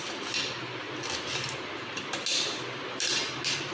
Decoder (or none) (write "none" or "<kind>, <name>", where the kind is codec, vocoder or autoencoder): none